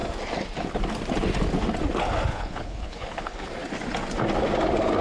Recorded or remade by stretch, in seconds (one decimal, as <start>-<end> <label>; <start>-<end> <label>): 0.0-2.3 recorded; 2.3-3.5 remade; 3.5-5.0 recorded